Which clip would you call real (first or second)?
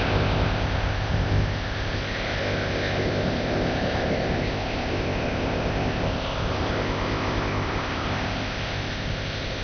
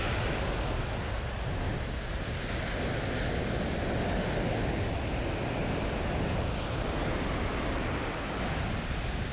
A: second